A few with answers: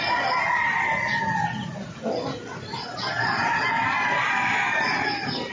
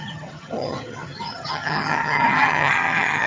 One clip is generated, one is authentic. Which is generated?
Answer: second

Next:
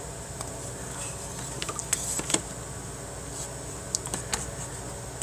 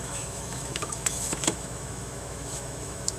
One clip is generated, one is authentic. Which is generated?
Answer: second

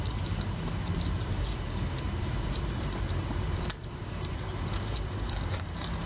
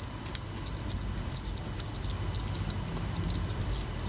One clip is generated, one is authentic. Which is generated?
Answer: first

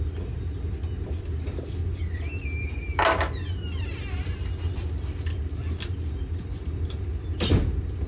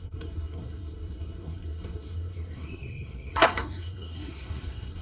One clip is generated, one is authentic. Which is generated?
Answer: second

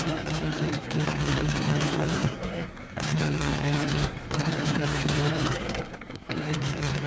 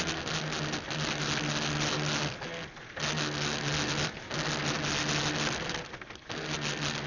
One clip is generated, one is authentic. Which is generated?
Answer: first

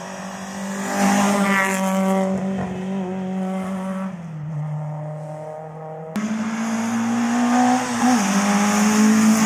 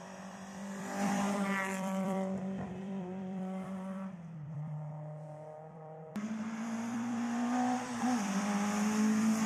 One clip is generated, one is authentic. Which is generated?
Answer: second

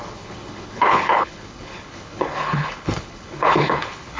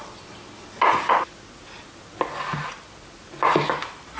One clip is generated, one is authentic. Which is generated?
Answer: first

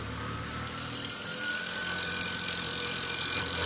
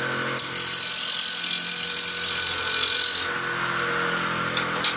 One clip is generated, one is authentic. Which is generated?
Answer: first